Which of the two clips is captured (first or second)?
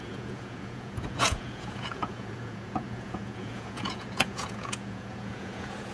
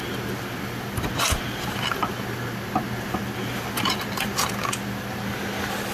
second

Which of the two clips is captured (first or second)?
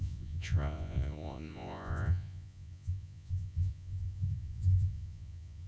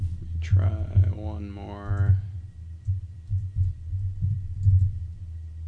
second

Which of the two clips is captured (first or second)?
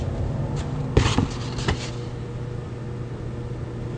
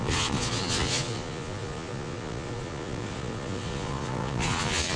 first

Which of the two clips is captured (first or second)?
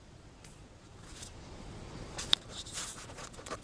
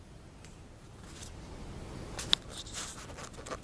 second